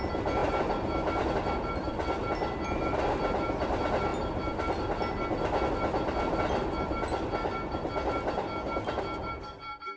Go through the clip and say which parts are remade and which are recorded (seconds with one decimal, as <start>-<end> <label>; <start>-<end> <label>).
0.0-10.0 recorded